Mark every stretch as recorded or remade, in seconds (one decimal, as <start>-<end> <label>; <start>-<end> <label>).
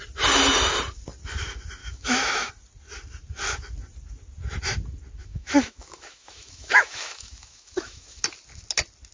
0.0-1.8 recorded; 1.8-2.5 remade; 2.5-5.2 recorded; 5.2-8.2 remade; 8.2-9.1 recorded